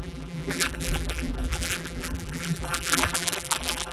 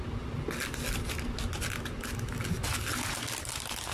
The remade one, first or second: first